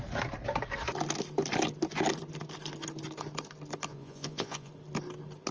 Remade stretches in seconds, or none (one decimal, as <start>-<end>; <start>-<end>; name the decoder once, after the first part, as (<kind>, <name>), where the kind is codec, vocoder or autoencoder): 3.9-4.7 (vocoder, Vocos)